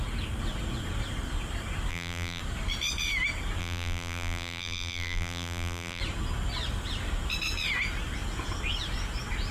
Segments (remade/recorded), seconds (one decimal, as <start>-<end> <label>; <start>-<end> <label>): 0.0-1.9 recorded; 1.9-2.4 remade; 2.4-3.6 recorded; 3.6-6.0 remade; 6.0-9.5 recorded